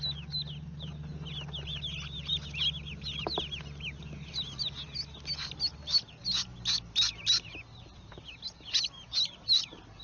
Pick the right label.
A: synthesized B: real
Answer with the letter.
B